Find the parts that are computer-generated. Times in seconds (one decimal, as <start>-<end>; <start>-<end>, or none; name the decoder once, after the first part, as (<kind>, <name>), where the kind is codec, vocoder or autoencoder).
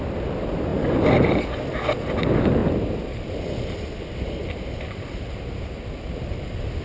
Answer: none